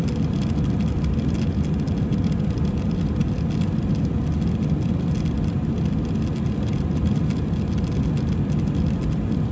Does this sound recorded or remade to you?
recorded